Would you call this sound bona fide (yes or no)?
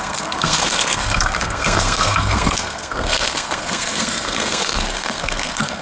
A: no